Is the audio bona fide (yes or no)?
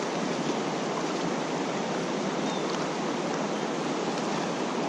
yes